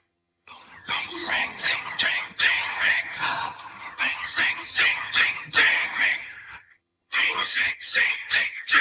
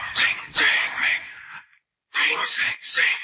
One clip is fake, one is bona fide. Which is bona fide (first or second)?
second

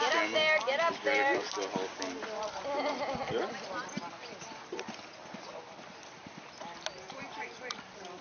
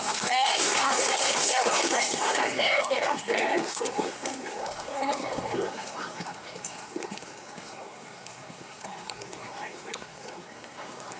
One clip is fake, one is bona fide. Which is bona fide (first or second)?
first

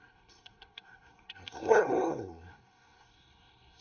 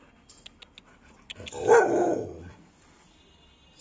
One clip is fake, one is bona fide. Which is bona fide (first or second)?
second